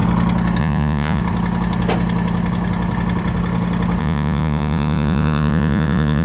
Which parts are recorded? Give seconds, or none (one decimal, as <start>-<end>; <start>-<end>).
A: 0.0-0.6; 1.2-4.0